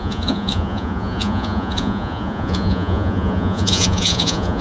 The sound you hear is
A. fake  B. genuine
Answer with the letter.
A